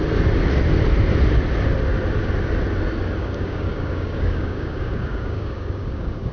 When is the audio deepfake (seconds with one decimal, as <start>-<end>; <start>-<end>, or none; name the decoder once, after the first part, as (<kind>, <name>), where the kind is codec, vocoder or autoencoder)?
3.2-6.3 (codec, DAC)